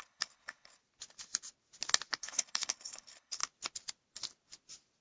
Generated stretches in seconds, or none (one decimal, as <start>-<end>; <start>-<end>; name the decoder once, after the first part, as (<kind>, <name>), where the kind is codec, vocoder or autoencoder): 0.0-0.8 (codec, HILCodec); 2.2-3.4